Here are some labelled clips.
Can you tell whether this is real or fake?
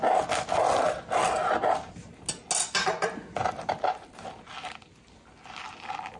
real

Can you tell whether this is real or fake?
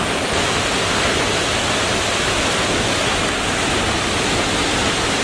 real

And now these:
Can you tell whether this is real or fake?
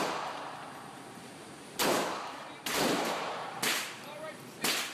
fake